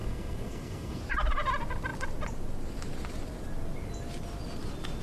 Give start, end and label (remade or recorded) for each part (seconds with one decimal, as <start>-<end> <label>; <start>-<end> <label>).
0.0-1.0 remade; 1.0-5.0 recorded